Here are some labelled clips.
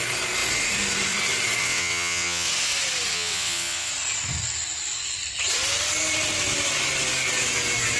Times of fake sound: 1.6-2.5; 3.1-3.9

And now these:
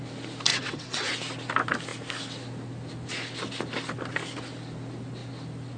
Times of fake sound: 0.5-1.1

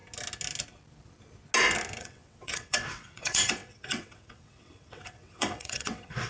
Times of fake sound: 2.0-6.3

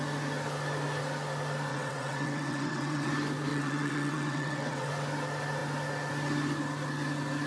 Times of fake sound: 1.7-3.1; 3.5-4.9

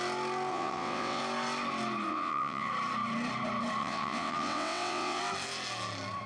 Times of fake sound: 0.5-1.2; 2.1-2.7; 3.8-5.2

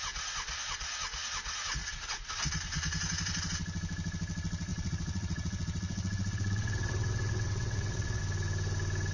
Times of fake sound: 1.8-2.4; 4.7-8.2

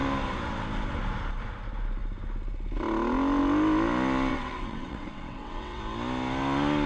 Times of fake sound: 4.3-5.8

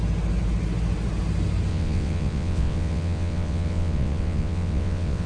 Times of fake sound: 1.7-5.3